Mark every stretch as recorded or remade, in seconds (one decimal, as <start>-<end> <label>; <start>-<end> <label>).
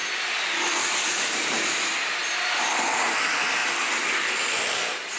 0.0-5.2 recorded